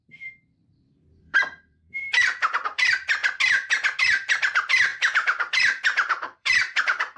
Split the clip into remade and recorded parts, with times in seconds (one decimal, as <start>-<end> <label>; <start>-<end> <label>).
0.0-3.2 remade; 3.2-4.0 recorded; 4.0-7.2 remade